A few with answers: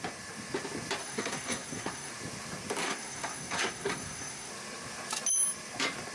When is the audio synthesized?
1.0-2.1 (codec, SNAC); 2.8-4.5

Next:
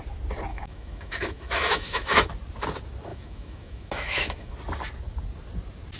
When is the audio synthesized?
0.5-2.3 (autoencoder, DAC-VAE); 3.1-4.5

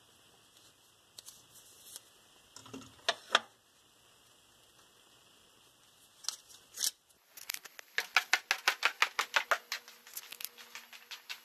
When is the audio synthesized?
none

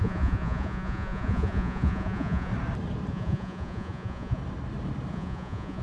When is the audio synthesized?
0.0-2.5 (vocoder, Vocos); 3.1-4.4; 5.1-5.8

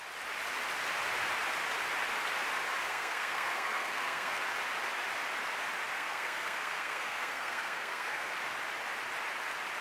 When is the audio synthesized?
2.8-4.4 (codec, SNAC); 5.9-8.3

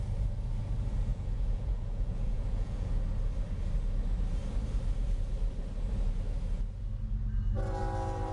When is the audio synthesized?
1.1-3.0 (vocoder, Vocos)

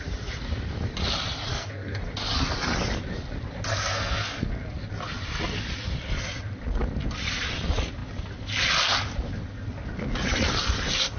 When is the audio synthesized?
1.5-2.0 (codec, SNAC); 3.7-4.5